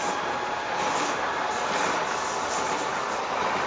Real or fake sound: real